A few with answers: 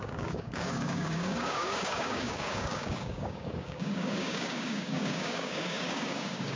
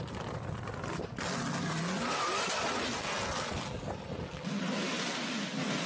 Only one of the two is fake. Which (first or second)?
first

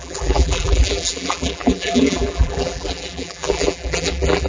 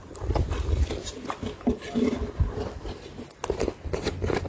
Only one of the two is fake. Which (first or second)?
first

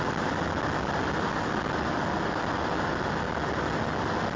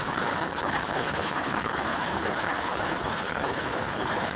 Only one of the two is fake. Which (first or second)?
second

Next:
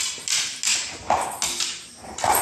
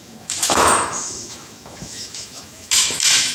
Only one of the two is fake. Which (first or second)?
second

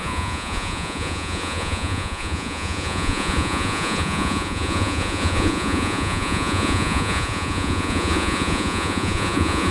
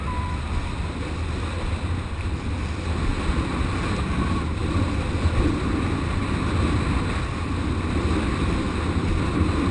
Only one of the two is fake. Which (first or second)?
first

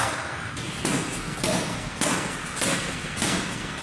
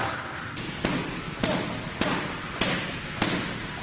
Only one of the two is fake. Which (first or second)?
first